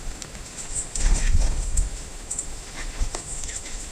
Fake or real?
fake